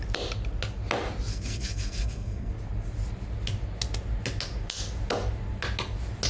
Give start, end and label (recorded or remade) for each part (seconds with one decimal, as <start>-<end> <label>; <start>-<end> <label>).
0.0-1.3 recorded; 1.3-2.5 remade; 2.5-6.3 recorded